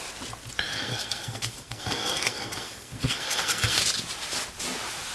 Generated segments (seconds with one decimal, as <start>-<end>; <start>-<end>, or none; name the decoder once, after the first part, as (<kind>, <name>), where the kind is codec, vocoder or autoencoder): 0.7-3.8 (codec, SNAC)